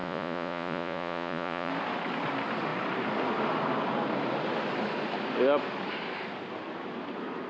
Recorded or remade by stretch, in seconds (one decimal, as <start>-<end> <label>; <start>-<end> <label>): 0.0-1.7 remade; 1.7-7.5 recorded